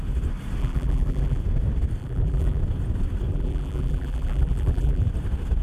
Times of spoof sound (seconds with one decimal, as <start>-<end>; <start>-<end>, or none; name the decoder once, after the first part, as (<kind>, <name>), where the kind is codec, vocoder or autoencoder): 0.6-1.4 (vocoder, BigVGAN v2); 2.0-2.6; 3.3-5.1